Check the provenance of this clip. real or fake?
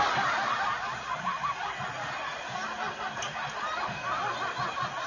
real